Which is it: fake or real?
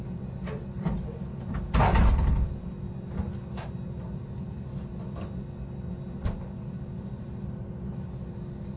real